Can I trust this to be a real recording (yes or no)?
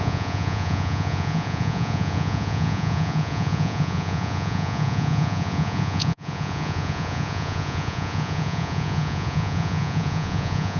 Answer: no